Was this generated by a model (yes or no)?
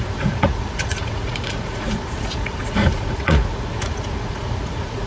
yes